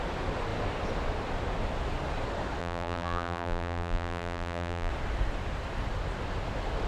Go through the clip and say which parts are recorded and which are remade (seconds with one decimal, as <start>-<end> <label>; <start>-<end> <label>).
0.0-2.6 recorded; 2.6-4.9 remade; 4.9-6.9 recorded